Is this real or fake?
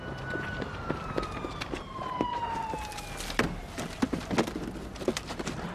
real